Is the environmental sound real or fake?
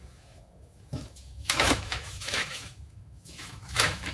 fake